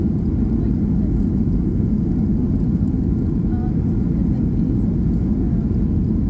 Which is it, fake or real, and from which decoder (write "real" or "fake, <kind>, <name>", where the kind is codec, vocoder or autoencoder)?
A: real